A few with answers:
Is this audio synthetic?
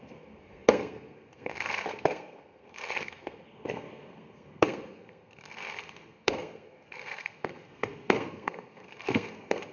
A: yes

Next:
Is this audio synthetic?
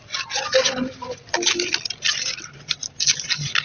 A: no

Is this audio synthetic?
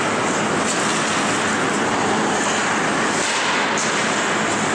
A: no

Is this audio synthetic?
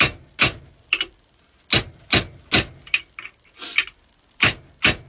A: no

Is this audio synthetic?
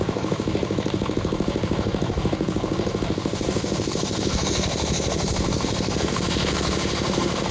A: yes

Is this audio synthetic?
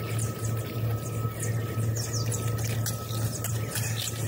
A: no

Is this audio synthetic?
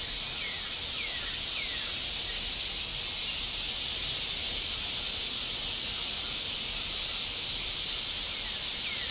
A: no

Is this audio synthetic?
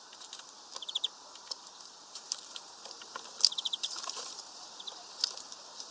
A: yes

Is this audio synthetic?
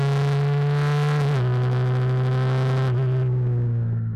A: no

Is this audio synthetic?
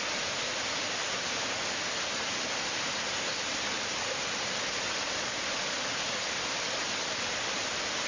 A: no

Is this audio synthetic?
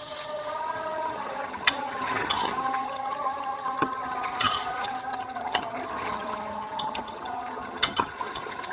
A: yes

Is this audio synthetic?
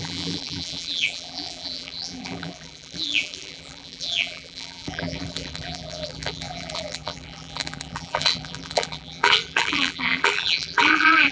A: yes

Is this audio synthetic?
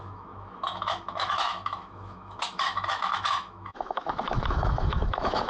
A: yes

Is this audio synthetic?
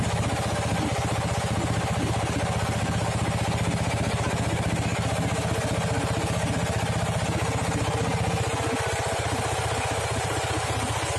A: no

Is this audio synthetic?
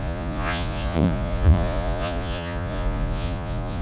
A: yes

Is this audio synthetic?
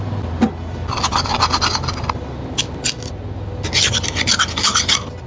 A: no